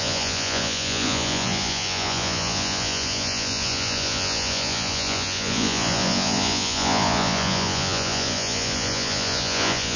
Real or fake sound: fake